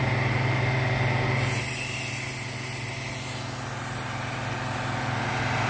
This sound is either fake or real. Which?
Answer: real